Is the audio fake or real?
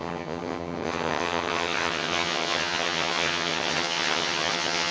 fake